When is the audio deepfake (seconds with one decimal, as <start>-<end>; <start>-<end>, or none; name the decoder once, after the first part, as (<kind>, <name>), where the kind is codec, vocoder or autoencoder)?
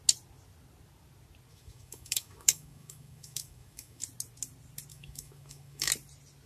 1.5-4.0 (autoencoder, DAC-VAE); 4.9-5.9